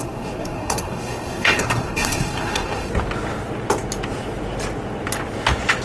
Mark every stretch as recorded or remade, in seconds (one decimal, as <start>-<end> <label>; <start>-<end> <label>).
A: 0.0-2.9 remade; 2.9-5.8 recorded